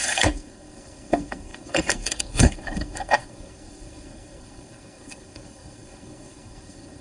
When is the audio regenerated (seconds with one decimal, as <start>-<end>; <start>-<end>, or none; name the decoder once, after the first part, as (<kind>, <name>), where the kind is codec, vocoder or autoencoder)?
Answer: 0.0-7.0 (codec, SNAC)